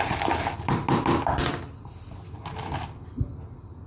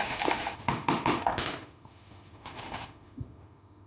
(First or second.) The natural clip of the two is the first